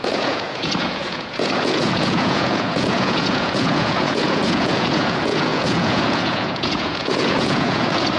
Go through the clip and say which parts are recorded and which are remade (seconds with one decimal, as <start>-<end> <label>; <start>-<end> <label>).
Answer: 0.0-8.2 remade